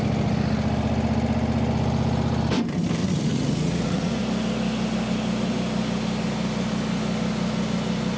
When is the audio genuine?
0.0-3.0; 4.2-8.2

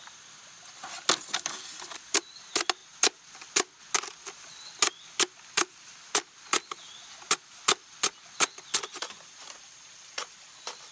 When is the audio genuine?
0.0-10.9